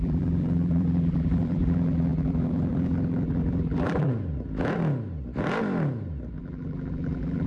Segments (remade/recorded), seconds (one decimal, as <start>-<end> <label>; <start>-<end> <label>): 0.0-4.1 remade; 4.1-6.4 recorded; 6.4-7.5 remade